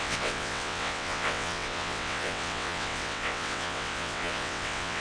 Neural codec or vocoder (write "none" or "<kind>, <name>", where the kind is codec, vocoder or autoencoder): vocoder, WaveNeXt